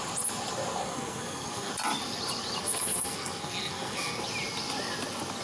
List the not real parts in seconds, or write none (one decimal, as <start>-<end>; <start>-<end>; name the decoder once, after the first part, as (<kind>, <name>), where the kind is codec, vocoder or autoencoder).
0.8-1.7 (codec, SNAC); 2.6-4.2

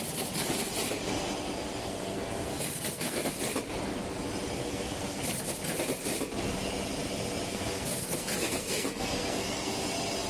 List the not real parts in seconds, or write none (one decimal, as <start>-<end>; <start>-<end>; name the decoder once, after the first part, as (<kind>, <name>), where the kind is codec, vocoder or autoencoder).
1.8-3.4 (codec, SNAC); 4.6-5.2; 7.5-9.7

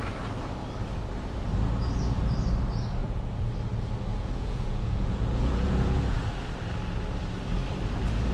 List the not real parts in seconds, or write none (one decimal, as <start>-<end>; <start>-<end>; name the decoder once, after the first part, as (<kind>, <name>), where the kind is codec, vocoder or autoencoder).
3.0-3.5 (vocoder, Vocos); 4.1-6.2

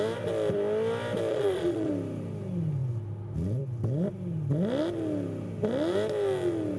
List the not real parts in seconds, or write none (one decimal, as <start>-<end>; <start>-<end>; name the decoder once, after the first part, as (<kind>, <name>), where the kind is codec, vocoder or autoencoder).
1.3-1.9 (vocoder, Vocos)

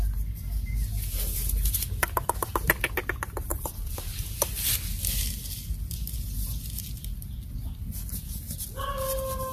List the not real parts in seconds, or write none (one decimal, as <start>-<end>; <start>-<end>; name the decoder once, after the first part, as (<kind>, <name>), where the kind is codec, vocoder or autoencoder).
3.5-4.3 (vocoder, BigVGAN v2)

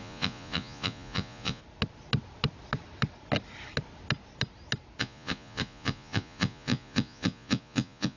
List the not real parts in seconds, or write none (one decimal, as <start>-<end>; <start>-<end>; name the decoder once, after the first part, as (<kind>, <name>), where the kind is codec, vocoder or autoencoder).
0.0-1.6 (vocoder, Vocos); 5.0-8.2